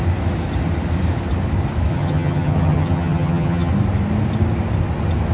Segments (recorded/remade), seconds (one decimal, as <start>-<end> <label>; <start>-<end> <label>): 0.0-1.9 recorded; 1.9-3.7 remade; 3.7-5.3 recorded